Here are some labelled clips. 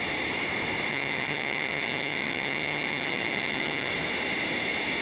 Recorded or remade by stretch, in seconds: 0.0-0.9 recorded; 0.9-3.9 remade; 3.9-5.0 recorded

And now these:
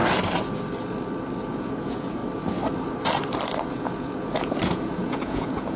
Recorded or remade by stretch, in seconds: 0.0-1.5 recorded; 1.5-2.2 remade; 2.2-3.7 recorded; 3.7-5.8 remade

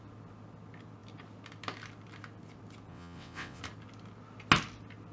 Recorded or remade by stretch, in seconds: 0.0-2.9 recorded; 2.9-3.6 remade; 3.6-5.1 recorded

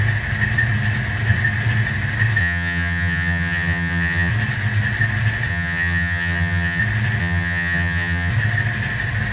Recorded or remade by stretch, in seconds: 0.0-2.4 recorded; 2.4-4.3 remade; 4.3-5.5 recorded; 5.5-6.8 remade; 6.8-7.2 recorded; 7.2-8.3 remade; 8.3-9.3 recorded

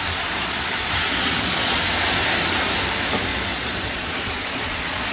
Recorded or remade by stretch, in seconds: 0.0-0.4 recorded; 0.4-1.8 remade; 1.8-3.3 recorded; 3.3-5.1 remade

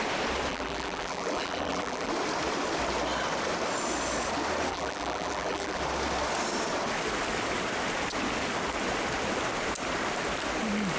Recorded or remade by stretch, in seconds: 0.0-0.5 recorded; 0.5-2.1 remade; 2.1-4.7 recorded; 4.7-5.8 remade; 5.8-11.0 recorded

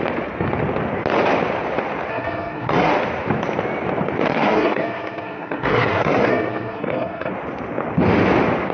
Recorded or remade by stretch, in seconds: 0.0-2.1 recorded; 2.1-2.9 remade; 2.9-4.3 recorded; 4.3-7.3 remade; 7.3-8.7 recorded